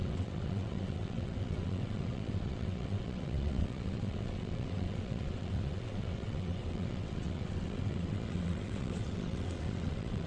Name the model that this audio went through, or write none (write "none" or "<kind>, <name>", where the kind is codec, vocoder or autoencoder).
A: vocoder, WaveNeXt